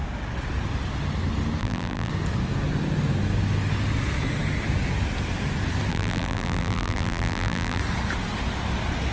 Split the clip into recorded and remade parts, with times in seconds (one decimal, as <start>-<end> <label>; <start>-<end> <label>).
0.0-1.6 recorded; 1.6-2.1 remade; 2.1-5.9 recorded; 5.9-7.8 remade; 7.8-9.1 recorded